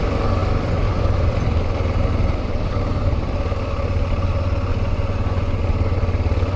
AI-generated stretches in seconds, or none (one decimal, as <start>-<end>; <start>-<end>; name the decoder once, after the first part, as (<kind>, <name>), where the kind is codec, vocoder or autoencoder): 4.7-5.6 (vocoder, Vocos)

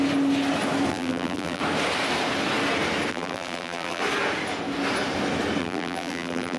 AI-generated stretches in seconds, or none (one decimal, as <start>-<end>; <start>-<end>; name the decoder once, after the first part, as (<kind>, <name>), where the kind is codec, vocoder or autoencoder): 0.9-1.6 (vocoder, BigVGAN v2); 3.1-4.0; 5.6-6.6

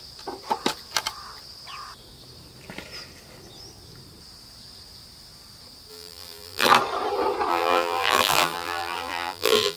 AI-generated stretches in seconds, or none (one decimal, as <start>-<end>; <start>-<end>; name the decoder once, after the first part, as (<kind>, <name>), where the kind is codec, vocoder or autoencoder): 5.9-6.7 (vocoder, BigVGAN v2); 7.5-9.8

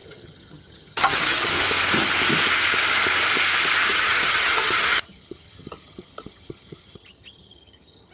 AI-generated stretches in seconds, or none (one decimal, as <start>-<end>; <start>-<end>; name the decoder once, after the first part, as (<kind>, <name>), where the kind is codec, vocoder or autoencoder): 0.0-1.5 (vocoder, HiFi-GAN); 3.9-8.1